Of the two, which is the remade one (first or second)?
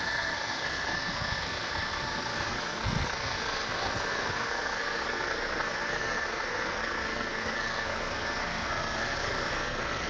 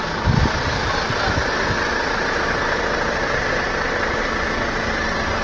first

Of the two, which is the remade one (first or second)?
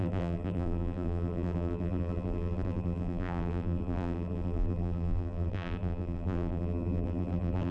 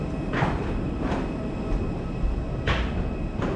first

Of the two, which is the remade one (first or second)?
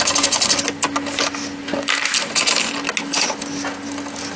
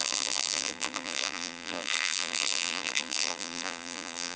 second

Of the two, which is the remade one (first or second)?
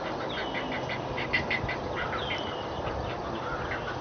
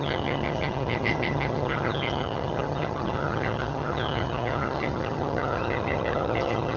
second